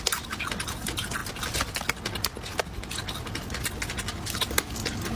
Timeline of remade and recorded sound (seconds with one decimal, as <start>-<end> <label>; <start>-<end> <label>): 0.0-5.2 recorded